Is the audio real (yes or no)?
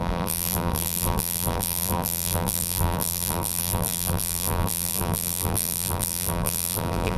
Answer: no